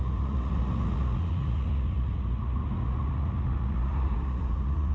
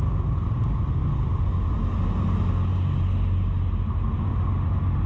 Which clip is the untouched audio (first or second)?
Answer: second